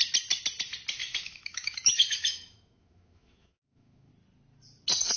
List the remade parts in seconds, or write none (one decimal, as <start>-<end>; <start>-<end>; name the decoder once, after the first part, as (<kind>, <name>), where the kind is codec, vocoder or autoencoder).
1.0-4.1 (autoencoder, DAC-VAE)